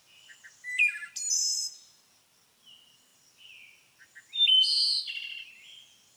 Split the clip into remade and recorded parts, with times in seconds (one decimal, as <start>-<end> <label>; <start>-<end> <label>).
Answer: 0.0-6.2 recorded